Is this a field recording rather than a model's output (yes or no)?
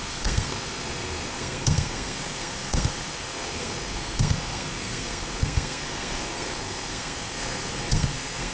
no